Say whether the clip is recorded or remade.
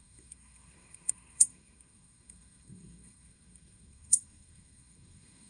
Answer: remade